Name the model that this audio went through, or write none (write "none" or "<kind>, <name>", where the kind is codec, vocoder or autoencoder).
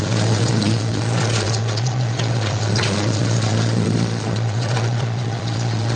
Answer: vocoder, Vocos